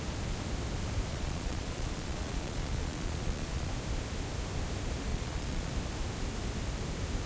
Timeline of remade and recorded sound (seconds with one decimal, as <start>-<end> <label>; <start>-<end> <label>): 0.0-1.1 recorded; 1.1-3.7 remade; 3.7-5.1 recorded; 5.1-5.7 remade; 5.7-7.3 recorded